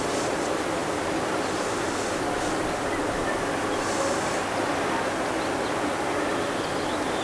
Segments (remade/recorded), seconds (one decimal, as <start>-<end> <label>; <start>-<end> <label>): 0.0-7.2 recorded